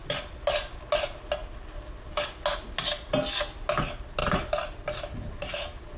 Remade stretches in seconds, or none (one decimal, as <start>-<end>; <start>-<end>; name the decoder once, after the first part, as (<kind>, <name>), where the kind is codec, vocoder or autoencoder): 4.2-4.8 (vocoder, BigVGAN v2)